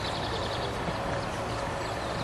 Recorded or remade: recorded